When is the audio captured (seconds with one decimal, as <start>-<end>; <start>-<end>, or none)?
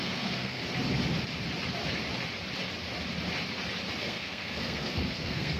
0.6-4.0